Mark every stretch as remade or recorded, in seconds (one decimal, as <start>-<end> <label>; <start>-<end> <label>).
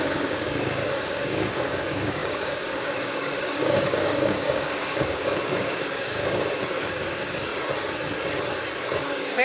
0.0-7.5 remade; 7.5-9.0 recorded; 9.0-9.4 remade